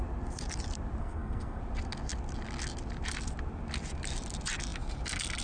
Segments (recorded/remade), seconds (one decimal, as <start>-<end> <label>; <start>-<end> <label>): 0.0-1.0 recorded; 1.0-1.6 remade; 1.6-5.4 recorded